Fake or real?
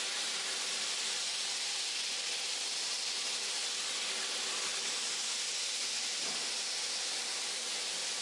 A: real